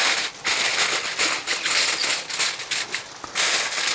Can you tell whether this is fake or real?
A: real